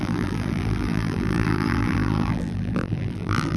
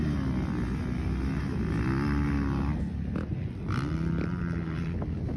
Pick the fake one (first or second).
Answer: first